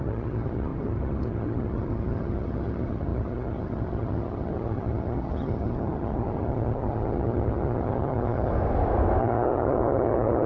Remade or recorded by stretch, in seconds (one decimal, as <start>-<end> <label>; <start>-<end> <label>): 0.0-8.5 remade; 8.5-9.2 recorded; 9.2-10.5 remade